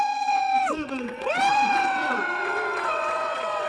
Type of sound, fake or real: fake